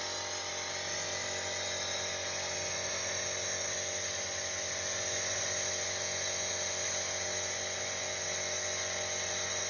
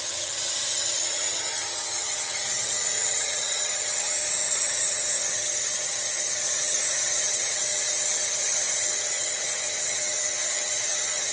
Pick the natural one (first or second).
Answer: first